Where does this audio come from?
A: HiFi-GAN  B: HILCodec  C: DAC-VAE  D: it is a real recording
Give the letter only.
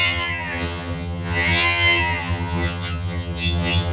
A